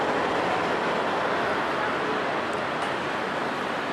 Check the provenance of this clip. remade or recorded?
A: recorded